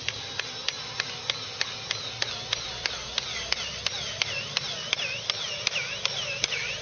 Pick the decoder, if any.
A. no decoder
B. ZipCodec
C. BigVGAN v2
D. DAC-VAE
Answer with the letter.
A